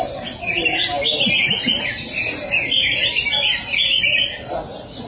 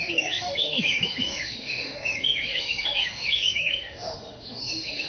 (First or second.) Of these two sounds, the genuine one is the first